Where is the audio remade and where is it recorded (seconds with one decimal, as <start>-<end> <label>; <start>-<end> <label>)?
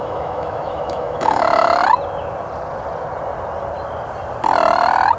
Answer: 0.0-1.8 remade; 1.8-5.2 recorded